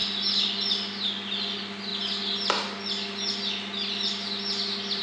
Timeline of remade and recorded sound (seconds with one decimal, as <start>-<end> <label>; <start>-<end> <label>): 0.0-5.0 recorded

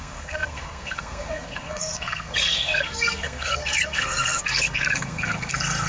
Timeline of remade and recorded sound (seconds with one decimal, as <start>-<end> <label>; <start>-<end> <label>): 0.0-5.9 remade

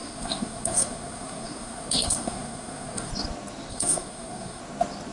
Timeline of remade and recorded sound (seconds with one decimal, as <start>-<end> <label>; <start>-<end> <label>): 0.0-3.1 remade; 3.1-3.7 recorded; 3.7-4.6 remade; 4.6-5.1 recorded

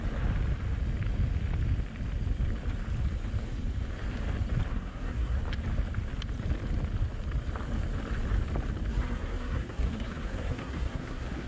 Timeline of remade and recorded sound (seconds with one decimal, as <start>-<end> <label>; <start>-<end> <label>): 0.0-4.7 recorded; 4.7-5.4 remade; 5.4-8.9 recorded; 8.9-11.5 remade

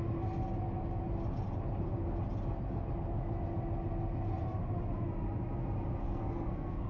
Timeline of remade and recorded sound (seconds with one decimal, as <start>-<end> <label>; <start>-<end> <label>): 0.0-6.0 recorded; 6.0-6.9 remade

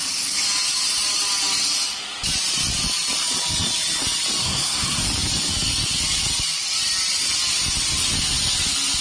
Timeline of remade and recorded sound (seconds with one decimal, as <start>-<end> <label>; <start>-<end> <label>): 0.0-4.4 recorded; 4.4-5.0 remade; 5.0-9.0 recorded

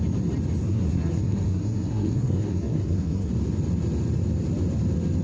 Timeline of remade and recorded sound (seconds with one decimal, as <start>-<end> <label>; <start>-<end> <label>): 0.0-0.6 recorded; 0.6-3.3 remade; 3.3-5.2 recorded

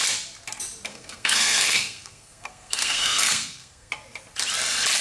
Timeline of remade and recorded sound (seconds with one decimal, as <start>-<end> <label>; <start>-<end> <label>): 0.0-0.9 recorded; 0.9-3.9 remade; 3.9-5.0 recorded